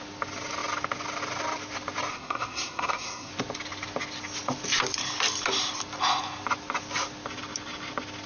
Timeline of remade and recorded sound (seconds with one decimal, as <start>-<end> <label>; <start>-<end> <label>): 0.0-2.1 recorded; 2.1-3.3 remade; 3.3-8.3 recorded